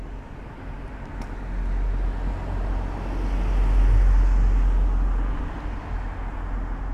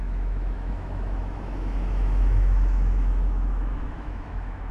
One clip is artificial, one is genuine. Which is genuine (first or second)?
first